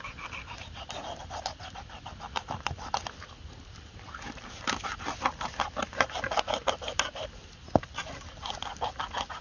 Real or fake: real